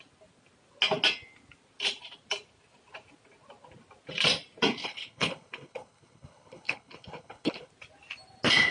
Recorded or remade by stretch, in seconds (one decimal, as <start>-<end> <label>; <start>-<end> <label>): 0.0-4.8 recorded; 4.8-7.7 remade; 7.7-8.7 recorded